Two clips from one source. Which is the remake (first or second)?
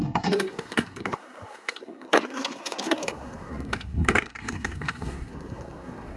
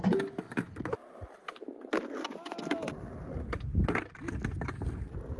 first